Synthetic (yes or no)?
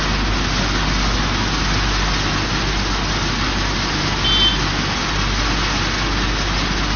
no